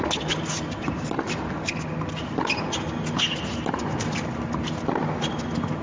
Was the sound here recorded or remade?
recorded